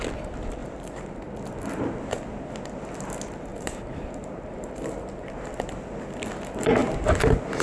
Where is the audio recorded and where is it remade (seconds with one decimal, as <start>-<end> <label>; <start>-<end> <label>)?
0.0-0.6 recorded; 0.6-1.2 remade; 1.2-3.5 recorded; 3.5-5.5 remade; 5.5-7.6 recorded